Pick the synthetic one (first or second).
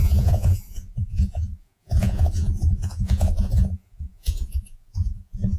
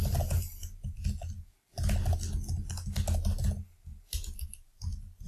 first